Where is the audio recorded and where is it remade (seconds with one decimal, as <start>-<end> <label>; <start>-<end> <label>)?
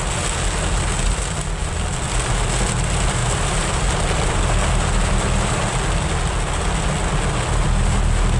0.0-1.6 recorded; 1.6-2.3 remade; 2.3-3.2 recorded; 3.2-6.8 remade; 6.8-8.4 recorded